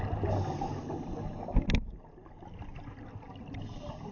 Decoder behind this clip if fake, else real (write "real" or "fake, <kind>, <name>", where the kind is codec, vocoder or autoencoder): real